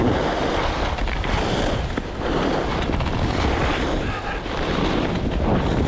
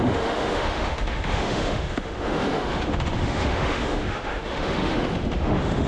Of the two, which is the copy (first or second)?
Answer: second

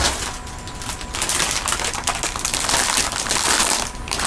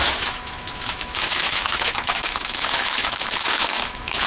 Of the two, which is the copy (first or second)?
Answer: second